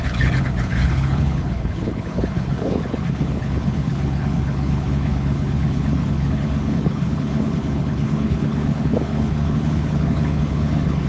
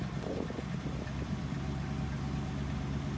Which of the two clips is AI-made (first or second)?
first